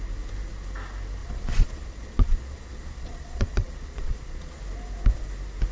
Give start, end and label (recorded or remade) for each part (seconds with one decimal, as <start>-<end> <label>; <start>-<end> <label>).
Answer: 0.0-1.2 recorded; 1.2-4.6 remade; 4.6-5.7 recorded